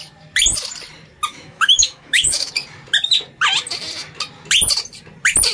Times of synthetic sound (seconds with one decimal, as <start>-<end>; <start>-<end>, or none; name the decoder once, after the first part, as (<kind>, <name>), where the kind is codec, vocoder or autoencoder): 1.3-2.5 (autoencoder, DAC-VAE)